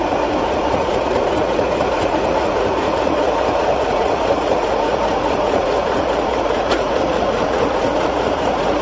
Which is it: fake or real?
fake